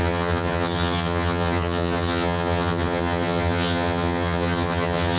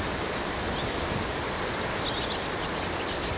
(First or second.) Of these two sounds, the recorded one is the second